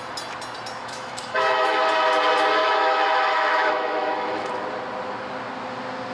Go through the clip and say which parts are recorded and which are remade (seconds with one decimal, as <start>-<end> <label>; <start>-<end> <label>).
0.0-0.8 recorded; 0.8-1.8 remade; 1.8-2.6 recorded; 2.6-4.5 remade; 4.5-6.1 recorded

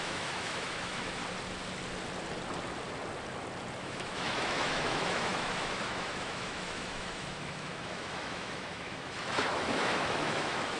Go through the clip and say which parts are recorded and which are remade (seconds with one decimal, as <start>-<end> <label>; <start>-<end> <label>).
0.0-1.2 remade; 1.2-3.8 recorded; 3.8-10.8 remade

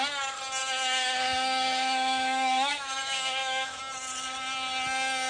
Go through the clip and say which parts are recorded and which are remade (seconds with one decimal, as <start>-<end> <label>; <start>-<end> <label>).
0.0-0.6 recorded; 0.6-3.8 remade; 3.8-5.3 recorded

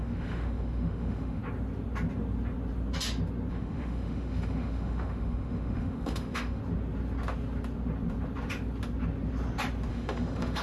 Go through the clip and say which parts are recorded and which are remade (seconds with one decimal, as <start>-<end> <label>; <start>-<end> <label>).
0.0-1.4 remade; 1.4-3.5 recorded; 3.5-6.6 remade; 6.6-9.9 recorded; 9.9-10.6 remade

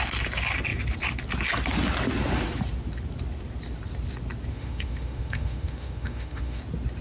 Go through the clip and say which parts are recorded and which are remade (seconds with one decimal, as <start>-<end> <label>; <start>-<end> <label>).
0.0-4.5 recorded; 4.5-6.6 remade; 6.6-7.0 recorded

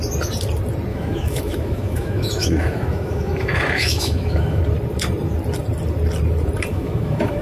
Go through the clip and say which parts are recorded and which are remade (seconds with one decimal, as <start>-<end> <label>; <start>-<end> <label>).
0.0-0.9 recorded; 0.9-4.6 remade; 4.6-6.7 recorded; 6.7-7.4 remade

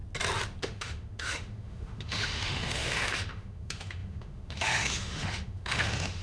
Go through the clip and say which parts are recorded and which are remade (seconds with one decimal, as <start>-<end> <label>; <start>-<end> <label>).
0.0-0.6 recorded; 0.6-6.2 remade